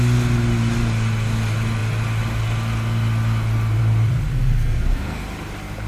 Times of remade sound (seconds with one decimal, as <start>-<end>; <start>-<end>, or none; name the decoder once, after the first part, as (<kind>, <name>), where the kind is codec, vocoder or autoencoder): 4.3-5.2 (codec, SNAC)